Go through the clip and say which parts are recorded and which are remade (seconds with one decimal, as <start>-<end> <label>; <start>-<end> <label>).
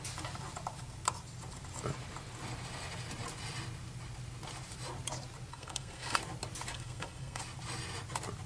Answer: 0.0-5.5 recorded; 5.5-6.2 remade; 6.2-6.7 recorded; 6.7-7.4 remade; 7.4-8.5 recorded